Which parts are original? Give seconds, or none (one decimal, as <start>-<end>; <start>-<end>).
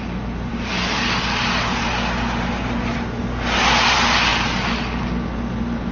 0.0-5.9